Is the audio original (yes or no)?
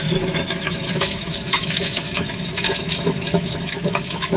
no